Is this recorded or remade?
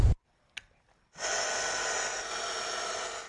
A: recorded